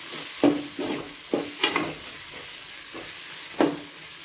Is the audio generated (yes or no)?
no